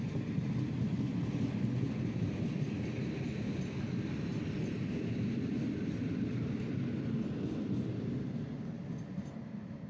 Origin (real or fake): real